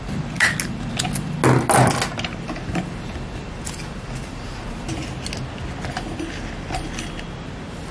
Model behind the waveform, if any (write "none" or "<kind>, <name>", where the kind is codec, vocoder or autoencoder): none